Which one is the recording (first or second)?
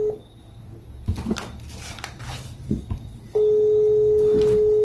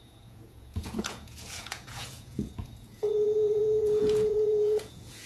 first